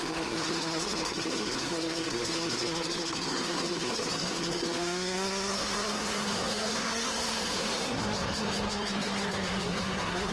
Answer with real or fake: fake